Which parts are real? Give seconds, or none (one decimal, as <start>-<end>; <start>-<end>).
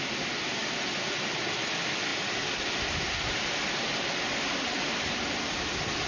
0.0-6.1